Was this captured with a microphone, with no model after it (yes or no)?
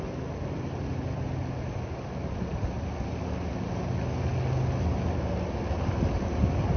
yes